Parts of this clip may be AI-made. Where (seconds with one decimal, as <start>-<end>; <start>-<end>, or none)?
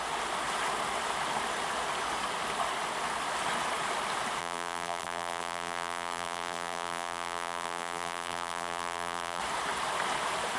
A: 4.4-9.4